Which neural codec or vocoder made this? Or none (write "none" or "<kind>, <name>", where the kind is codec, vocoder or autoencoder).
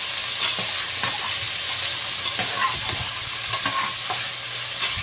none